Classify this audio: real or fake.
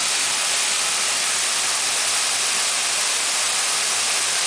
real